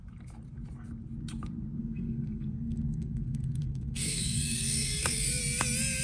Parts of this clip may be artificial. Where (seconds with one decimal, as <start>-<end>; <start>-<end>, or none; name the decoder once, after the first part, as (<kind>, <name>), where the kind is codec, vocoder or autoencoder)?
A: 1.8-5.4 (codec, SNAC)